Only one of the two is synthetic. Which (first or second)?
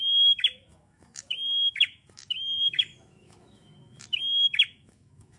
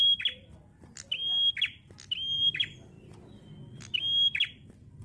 first